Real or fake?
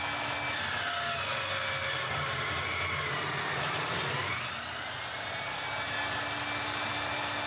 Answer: real